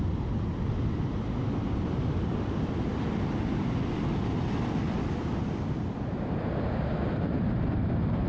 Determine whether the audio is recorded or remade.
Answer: recorded